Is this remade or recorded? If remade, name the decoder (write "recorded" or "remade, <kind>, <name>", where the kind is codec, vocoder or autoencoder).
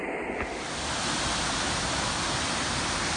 recorded